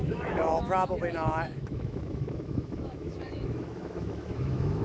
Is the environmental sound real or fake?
fake